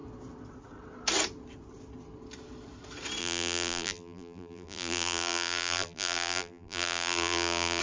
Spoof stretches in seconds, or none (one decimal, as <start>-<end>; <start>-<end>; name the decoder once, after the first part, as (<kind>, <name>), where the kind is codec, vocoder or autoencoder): 3.2-7.8 (vocoder, BigVGAN v2)